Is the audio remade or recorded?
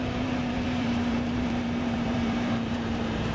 remade